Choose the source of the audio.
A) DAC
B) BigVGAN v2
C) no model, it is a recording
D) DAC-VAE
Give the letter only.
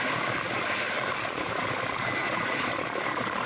A